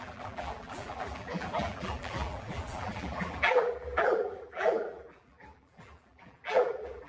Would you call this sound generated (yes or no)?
yes